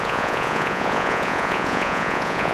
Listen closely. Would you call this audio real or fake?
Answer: fake